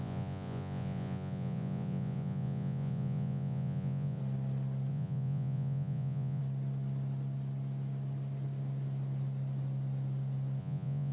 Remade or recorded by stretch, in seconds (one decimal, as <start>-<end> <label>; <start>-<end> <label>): 0.0-4.2 remade; 4.2-4.9 recorded; 4.9-6.4 remade; 6.4-10.6 recorded; 10.6-11.1 remade

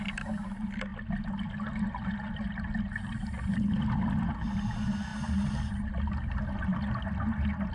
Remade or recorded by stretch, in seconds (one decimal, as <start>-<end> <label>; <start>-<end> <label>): 0.0-7.7 recorded

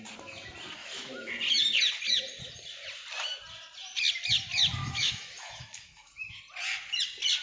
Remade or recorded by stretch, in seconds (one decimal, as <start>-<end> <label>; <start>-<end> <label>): 0.0-0.8 recorded; 0.8-1.3 remade; 1.3-4.8 recorded; 4.8-6.4 remade; 6.4-7.4 recorded

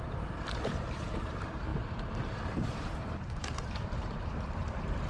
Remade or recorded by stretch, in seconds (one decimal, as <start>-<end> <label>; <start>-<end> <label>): 0.0-5.1 remade

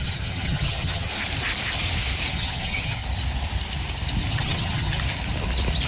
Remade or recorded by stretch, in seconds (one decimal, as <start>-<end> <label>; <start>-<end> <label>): 0.0-1.1 remade; 1.1-2.3 recorded; 2.3-3.0 remade; 3.0-4.3 recorded; 4.3-4.9 remade; 4.9-5.9 recorded

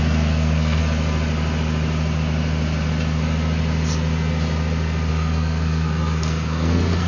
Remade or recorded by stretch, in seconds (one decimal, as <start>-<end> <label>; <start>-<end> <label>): 0.0-0.8 remade; 0.8-5.1 recorded; 5.1-7.1 remade

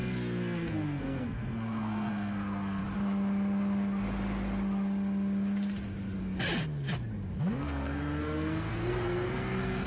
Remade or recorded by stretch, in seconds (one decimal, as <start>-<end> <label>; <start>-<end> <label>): 0.0-2.8 remade; 2.8-7.4 recorded; 7.4-9.9 remade